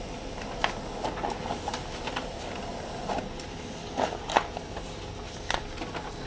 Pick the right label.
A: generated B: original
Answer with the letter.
B